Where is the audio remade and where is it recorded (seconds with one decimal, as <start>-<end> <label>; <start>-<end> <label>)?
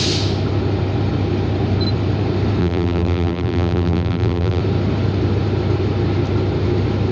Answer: 0.0-2.6 recorded; 2.6-4.6 remade; 4.6-7.1 recorded